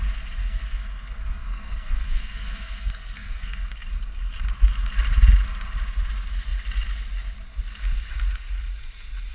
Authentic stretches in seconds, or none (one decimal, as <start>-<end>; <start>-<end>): 0.0-0.4; 3.8-9.3